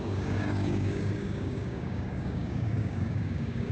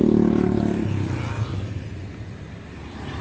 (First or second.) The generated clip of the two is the first